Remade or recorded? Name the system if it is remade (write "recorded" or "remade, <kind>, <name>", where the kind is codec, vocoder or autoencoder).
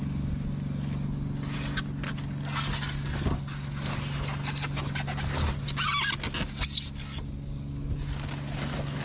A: recorded